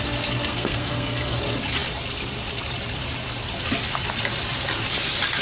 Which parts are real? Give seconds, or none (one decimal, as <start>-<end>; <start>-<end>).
0.0-0.5; 1.4-5.4